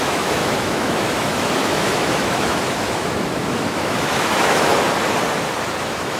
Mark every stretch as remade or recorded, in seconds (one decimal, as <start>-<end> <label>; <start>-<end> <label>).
0.0-4.7 remade; 4.7-5.8 recorded; 5.8-6.2 remade